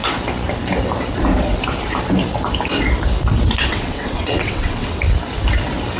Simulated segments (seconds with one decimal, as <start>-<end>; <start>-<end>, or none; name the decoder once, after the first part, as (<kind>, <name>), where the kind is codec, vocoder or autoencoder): 3.6-5.0 (vocoder, WaveNeXt)